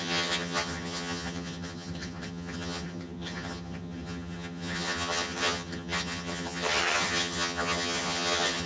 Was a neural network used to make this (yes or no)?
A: yes